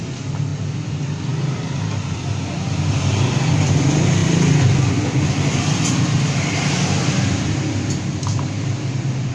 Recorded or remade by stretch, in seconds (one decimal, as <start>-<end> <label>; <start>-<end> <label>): 0.0-9.3 recorded